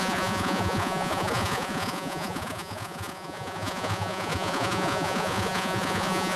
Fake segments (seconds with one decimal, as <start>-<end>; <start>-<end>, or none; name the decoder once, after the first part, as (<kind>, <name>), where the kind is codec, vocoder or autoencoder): 0.0-6.4 (vocoder, Vocos)